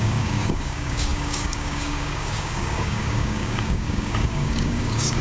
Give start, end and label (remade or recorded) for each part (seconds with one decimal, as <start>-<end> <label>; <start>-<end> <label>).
0.0-5.2 remade